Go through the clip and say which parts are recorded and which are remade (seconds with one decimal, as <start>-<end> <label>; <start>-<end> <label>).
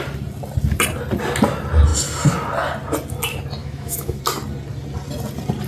0.0-3.6 recorded; 3.6-4.2 remade; 4.2-5.7 recorded